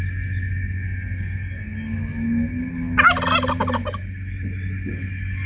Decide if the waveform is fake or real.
real